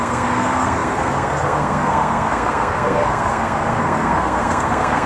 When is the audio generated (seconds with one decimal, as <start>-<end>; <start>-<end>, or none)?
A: 0.0-5.1